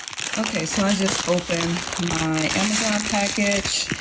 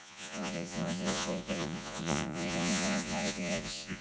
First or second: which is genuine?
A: first